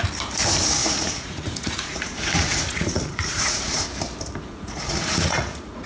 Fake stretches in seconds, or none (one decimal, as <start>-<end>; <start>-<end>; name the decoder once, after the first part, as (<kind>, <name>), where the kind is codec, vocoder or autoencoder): 0.8-3.8 (vocoder, Vocos); 4.5-5.9